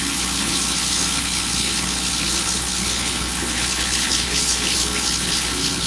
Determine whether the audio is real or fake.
fake